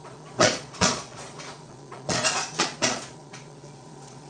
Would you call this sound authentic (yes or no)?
no